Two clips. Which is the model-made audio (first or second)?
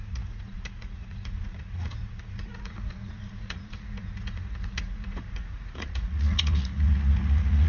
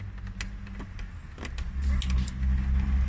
first